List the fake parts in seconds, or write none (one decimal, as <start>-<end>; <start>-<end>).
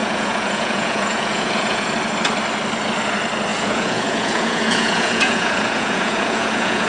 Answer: 0.0-1.9; 3.5-6.9